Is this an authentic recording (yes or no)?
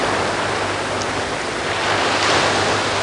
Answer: yes